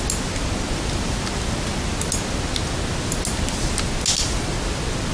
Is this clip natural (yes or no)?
yes